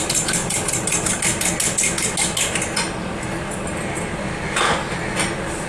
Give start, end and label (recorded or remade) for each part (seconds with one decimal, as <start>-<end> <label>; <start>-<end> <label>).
0.0-5.7 recorded